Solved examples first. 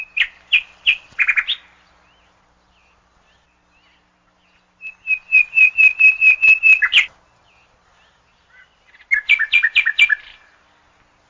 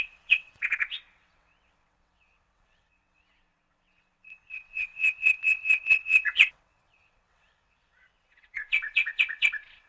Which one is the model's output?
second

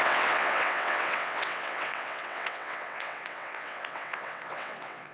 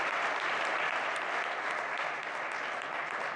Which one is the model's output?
first